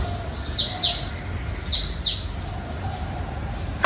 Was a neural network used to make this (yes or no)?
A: no